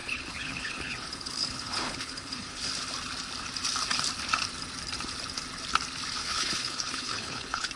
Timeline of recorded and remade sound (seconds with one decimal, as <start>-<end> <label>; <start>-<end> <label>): 0.0-2.7 remade; 2.7-6.2 recorded; 6.2-7.8 remade